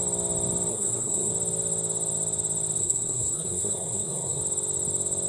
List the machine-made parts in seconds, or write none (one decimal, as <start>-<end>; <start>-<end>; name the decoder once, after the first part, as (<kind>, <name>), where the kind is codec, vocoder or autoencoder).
0.7-1.3 (codec, SNAC); 2.8-4.4